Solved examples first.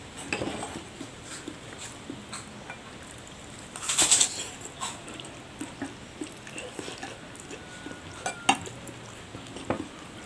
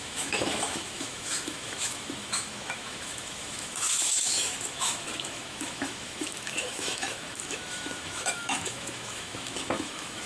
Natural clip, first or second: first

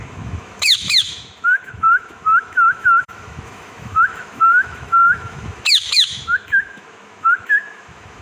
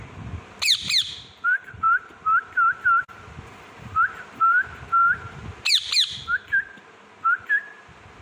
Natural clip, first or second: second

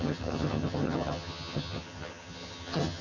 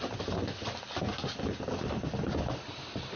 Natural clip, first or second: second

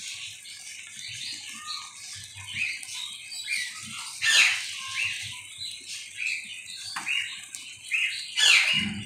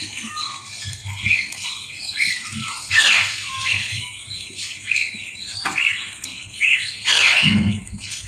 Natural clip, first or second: first